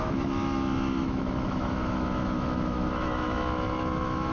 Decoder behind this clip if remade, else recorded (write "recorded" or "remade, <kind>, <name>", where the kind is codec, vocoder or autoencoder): remade, autoencoder, DAC-VAE